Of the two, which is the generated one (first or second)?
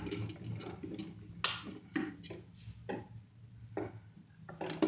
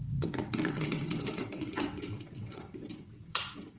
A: second